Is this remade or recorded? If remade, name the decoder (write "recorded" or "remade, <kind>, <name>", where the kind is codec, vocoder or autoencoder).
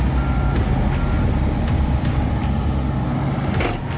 recorded